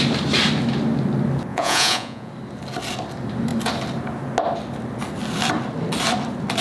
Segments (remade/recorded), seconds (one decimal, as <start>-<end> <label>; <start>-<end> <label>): 0.0-1.5 recorded; 1.5-2.3 remade; 2.3-6.6 recorded